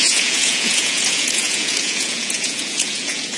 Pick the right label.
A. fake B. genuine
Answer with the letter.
A